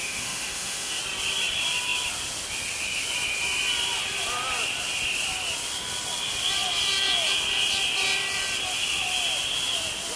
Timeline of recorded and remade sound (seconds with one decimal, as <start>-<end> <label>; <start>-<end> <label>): 0.0-1.0 remade; 1.0-10.2 recorded